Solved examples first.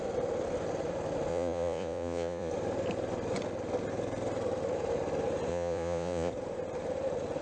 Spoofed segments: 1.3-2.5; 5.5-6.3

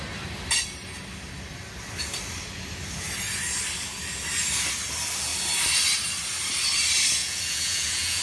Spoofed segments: 7.2-8.2